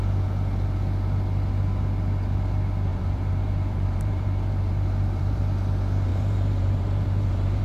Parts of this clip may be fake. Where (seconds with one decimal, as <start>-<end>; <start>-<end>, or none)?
2.9-5.4; 6.1-7.6

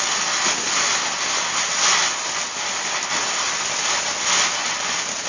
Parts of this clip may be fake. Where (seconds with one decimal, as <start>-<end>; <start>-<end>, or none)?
none

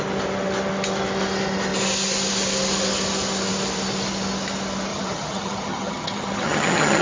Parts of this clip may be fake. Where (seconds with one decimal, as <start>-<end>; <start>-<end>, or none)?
4.9-7.0

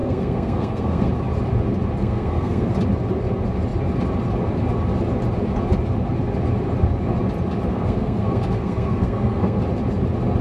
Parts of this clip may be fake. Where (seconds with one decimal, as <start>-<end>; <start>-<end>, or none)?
0.0-1.1; 2.0-2.7; 7.7-9.6

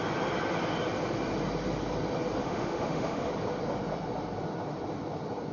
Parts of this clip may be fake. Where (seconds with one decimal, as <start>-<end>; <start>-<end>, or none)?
2.4-3.3

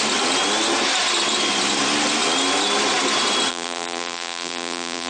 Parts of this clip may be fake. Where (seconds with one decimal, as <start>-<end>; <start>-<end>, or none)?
3.5-5.1